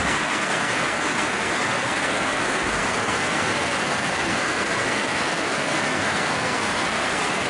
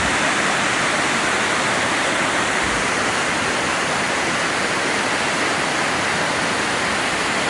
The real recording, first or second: second